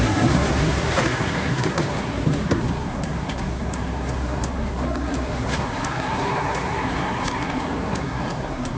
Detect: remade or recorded remade